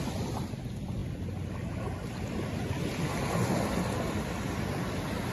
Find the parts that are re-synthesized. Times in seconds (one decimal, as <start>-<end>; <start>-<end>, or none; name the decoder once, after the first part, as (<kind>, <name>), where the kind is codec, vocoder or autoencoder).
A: none